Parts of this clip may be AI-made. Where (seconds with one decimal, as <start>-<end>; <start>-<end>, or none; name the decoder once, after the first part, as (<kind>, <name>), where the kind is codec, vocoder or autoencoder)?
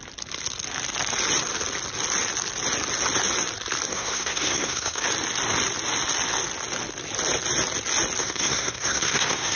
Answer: 3.9-5.0 (codec, SNAC); 8.2-9.6